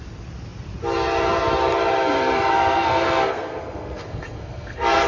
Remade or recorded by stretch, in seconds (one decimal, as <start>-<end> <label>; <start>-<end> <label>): 0.0-2.5 recorded; 2.5-5.1 remade